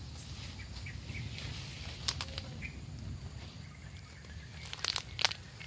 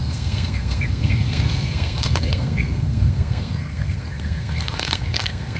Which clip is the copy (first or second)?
second